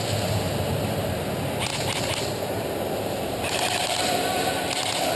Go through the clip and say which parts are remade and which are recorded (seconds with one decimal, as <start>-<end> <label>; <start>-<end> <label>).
0.0-1.7 recorded; 1.7-4.0 remade; 4.0-5.2 recorded